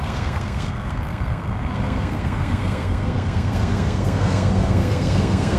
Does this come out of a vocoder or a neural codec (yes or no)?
yes